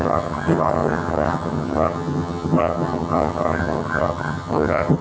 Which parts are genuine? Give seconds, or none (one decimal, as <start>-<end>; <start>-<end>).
none